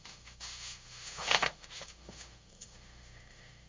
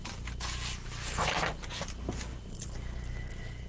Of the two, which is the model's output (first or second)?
first